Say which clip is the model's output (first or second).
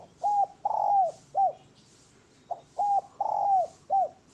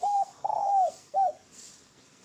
second